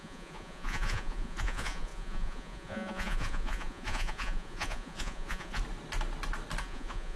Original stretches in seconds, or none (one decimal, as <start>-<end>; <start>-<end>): 5.6-6.6